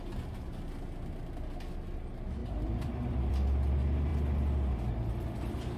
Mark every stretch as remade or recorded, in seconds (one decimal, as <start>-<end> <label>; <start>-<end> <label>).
0.0-2.4 recorded; 2.4-3.3 remade; 3.3-5.8 recorded

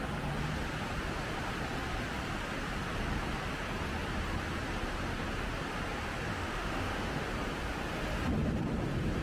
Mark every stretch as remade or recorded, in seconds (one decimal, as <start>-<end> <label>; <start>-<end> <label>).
0.0-6.3 recorded; 6.3-7.2 remade; 7.2-9.2 recorded

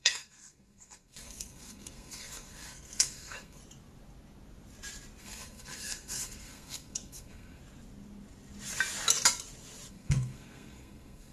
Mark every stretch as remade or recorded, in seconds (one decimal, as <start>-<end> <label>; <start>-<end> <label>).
0.0-3.6 remade; 3.6-5.2 recorded; 5.2-7.6 remade; 7.6-9.9 recorded; 9.9-11.3 remade

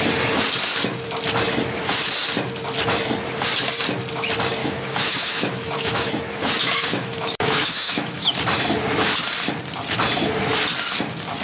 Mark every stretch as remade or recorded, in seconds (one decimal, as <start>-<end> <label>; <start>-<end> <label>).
0.0-4.6 recorded; 4.6-6.1 remade; 6.1-6.9 recorded; 6.9-8.3 remade; 8.3-11.4 recorded

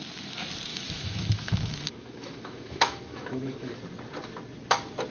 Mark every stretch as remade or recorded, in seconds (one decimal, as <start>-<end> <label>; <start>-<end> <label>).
0.0-0.7 recorded; 0.7-3.7 remade; 3.7-5.1 recorded

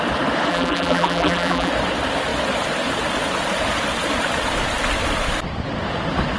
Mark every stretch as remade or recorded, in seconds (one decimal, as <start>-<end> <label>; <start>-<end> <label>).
0.0-0.5 recorded; 0.5-1.7 remade; 1.7-6.4 recorded

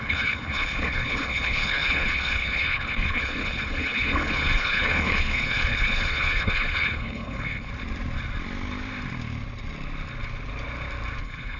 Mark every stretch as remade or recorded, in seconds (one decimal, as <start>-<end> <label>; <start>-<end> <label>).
0.0-7.7 remade; 7.7-11.2 recorded; 11.2-11.6 remade